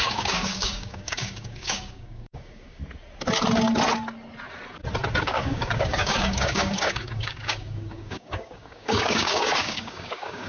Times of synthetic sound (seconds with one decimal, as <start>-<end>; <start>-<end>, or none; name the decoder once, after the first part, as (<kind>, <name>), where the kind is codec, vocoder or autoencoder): 0.0-2.8 (codec, DAC); 5.2-10.5

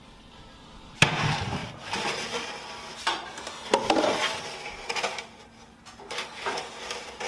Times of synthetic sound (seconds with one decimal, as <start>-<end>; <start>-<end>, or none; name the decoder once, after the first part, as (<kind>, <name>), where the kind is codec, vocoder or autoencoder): 0.0-1.6 (vocoder, BigVGAN v2); 6.0-7.3

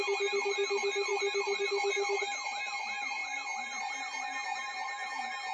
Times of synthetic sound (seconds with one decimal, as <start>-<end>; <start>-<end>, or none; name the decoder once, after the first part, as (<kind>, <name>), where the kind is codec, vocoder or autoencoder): none

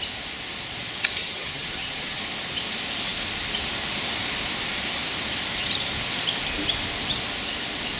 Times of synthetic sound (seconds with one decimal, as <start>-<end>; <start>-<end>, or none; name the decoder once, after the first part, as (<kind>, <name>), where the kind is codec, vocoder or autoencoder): 1.2-2.2 (vocoder, HiFi-GAN)

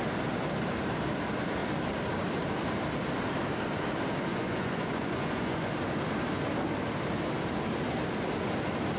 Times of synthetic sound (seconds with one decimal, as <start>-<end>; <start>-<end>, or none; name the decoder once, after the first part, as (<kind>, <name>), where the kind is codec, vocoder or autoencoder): 4.3-5.7 (vocoder, Vocos)